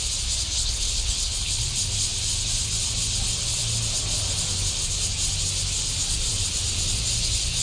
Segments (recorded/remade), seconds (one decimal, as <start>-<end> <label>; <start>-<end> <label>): 0.0-0.5 recorded; 0.5-1.6 remade; 1.6-7.6 recorded